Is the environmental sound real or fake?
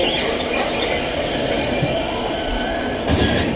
real